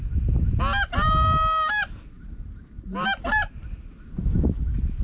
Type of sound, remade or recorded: recorded